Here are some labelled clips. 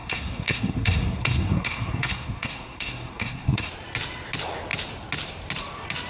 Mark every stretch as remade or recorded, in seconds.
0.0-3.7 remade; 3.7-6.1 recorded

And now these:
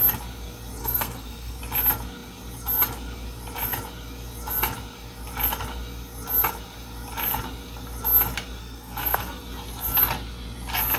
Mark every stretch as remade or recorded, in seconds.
0.0-0.8 recorded; 0.8-1.6 remade; 1.6-8.6 recorded; 8.6-9.4 remade; 9.4-11.0 recorded

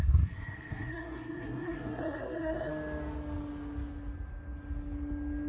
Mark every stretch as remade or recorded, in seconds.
0.0-2.7 remade; 2.7-5.5 recorded